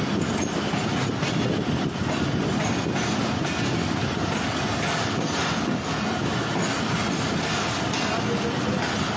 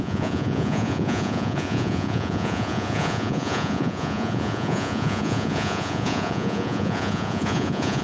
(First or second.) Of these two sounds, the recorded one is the first